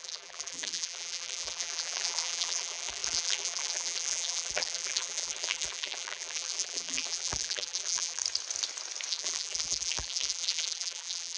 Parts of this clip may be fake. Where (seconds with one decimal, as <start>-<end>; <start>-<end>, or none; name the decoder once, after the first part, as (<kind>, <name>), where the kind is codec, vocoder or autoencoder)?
0.0-8.2 (vocoder, BigVGAN v2); 9.1-11.4